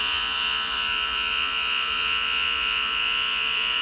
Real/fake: fake